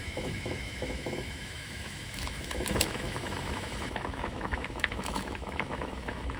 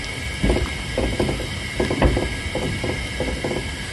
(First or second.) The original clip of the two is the second